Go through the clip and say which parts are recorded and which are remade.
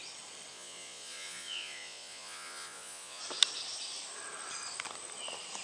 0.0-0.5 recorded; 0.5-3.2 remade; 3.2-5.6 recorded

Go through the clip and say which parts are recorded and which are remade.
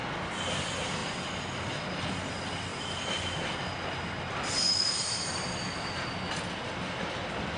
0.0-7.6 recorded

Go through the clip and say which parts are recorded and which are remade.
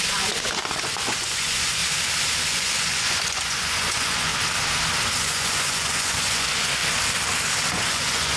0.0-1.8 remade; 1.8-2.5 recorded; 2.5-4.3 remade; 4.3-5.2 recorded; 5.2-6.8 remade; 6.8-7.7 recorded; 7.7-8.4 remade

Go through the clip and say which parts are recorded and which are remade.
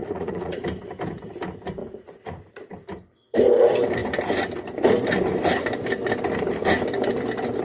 0.0-0.6 remade; 0.6-1.8 recorded; 1.8-2.5 remade; 2.5-7.6 recorded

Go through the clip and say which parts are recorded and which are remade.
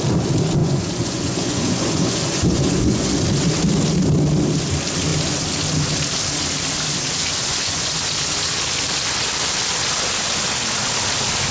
0.0-0.6 recorded; 0.6-3.1 remade; 3.1-7.4 recorded; 7.4-8.0 remade; 8.0-11.5 recorded